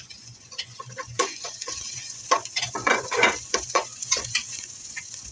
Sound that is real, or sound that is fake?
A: fake